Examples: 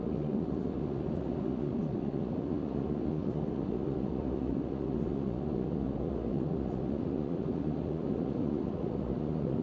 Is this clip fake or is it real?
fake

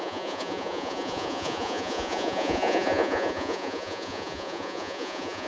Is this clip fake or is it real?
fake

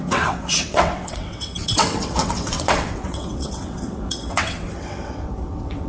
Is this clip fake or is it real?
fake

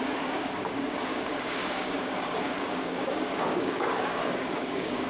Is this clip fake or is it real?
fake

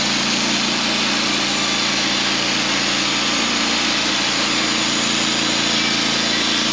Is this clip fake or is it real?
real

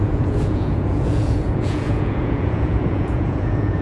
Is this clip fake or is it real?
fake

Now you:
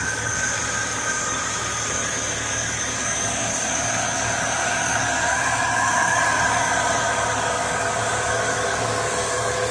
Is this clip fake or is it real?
fake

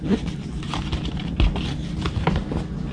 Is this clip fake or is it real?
real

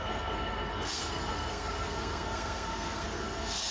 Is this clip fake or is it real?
fake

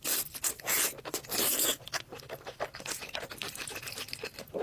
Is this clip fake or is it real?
real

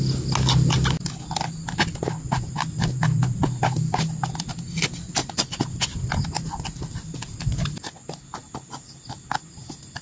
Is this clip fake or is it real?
real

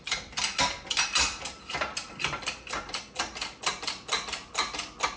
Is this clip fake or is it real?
real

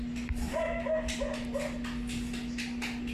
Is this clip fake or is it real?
real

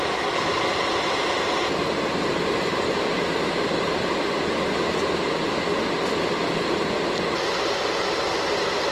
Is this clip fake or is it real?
real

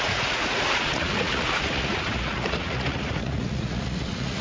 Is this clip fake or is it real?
fake